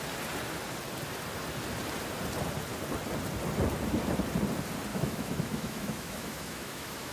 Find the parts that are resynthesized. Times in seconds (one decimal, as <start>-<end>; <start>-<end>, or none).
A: 4.9-7.1